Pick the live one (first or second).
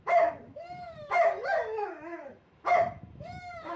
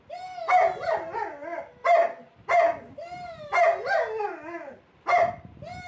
second